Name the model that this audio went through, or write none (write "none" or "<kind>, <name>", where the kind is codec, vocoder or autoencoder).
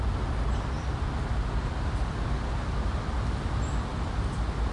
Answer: none